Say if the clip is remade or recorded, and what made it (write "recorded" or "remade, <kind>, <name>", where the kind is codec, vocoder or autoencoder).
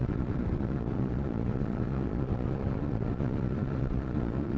remade, vocoder, Vocos